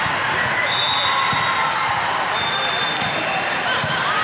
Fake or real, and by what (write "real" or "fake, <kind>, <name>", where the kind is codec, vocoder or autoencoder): real